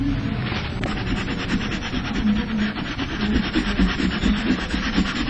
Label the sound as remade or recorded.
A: recorded